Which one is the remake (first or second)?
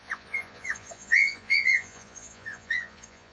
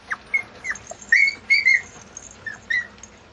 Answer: first